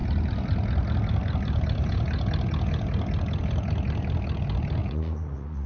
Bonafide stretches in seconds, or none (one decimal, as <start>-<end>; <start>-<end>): 0.0-4.8

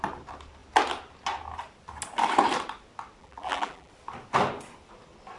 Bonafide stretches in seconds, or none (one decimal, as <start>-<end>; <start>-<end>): 0.0-3.2; 3.9-5.4

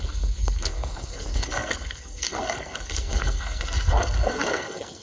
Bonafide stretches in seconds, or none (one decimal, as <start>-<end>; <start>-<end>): none

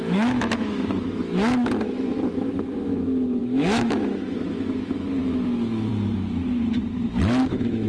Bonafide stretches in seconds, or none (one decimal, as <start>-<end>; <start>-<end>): 5.9-7.4